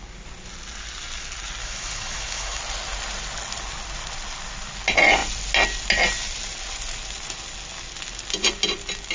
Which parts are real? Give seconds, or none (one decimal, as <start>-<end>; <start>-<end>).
0.0-1.6; 2.6-9.1